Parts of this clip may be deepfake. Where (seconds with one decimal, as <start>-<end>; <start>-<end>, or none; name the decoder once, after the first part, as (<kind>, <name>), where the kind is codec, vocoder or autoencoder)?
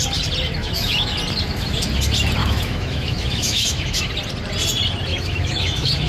0.6-1.1 (autoencoder, DAC-VAE); 2.4-4.1; 5.1-6.1